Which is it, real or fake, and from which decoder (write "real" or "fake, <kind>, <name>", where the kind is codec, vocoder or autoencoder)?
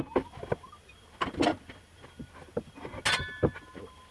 real